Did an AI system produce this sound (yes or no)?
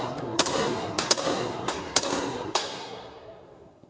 yes